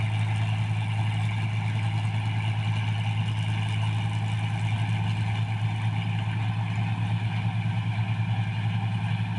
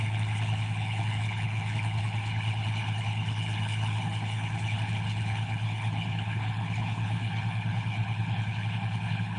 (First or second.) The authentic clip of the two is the first